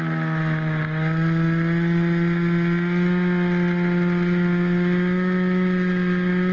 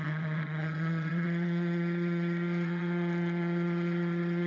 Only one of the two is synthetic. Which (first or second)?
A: second